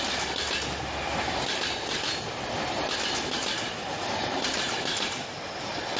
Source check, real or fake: real